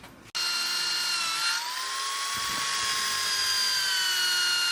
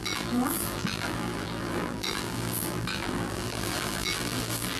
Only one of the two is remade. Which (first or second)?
second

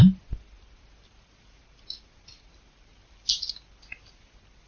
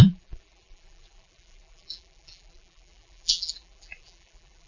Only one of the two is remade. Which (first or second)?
second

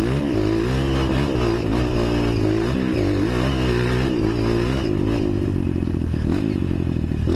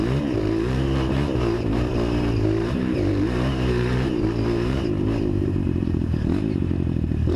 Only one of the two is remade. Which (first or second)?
second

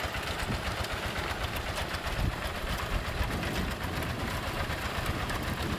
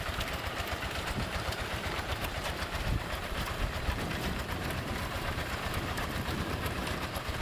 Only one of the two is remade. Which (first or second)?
second